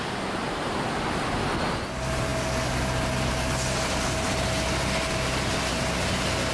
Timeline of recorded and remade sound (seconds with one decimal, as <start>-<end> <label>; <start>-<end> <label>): 0.0-6.5 recorded